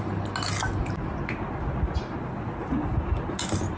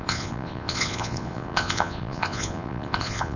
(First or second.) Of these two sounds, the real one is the first